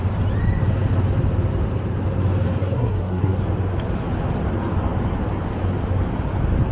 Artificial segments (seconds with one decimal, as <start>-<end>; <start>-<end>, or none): 2.6-3.4